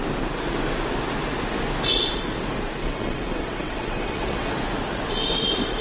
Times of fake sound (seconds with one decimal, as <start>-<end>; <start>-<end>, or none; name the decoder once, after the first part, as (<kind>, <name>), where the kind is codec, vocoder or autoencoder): 2.8-4.5 (vocoder, WaveNeXt)